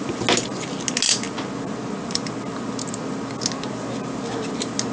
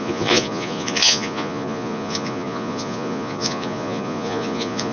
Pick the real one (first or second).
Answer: first